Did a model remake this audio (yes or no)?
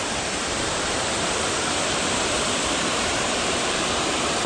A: yes